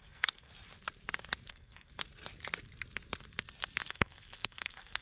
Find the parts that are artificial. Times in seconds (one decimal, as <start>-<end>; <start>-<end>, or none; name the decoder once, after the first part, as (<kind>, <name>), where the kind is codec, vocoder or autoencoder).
0.0-0.5 (codec, SNAC); 1.5-1.9; 3.9-5.0